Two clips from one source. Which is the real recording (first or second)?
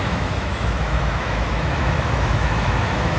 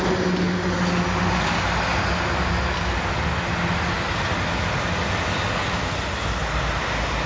second